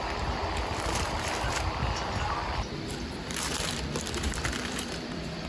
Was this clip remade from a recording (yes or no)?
yes